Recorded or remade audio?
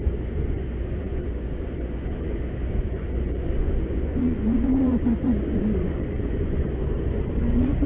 remade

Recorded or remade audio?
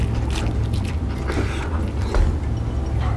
recorded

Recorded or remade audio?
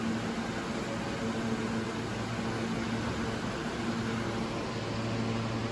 recorded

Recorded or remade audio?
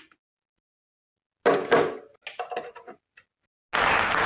recorded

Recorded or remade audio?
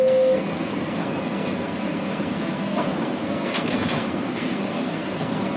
remade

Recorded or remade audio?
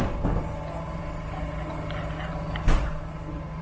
recorded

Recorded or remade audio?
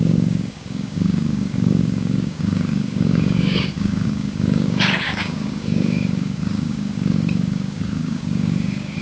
remade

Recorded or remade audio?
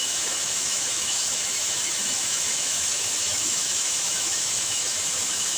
remade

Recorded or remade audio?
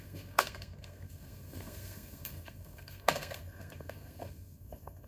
remade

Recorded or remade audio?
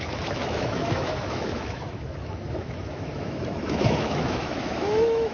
remade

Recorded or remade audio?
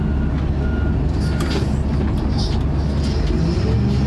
recorded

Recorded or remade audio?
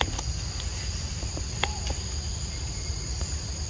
recorded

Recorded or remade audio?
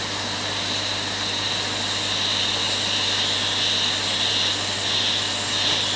recorded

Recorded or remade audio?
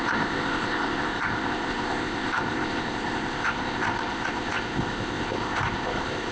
remade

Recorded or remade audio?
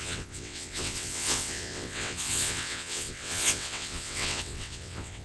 remade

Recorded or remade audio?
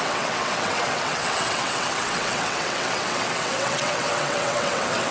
remade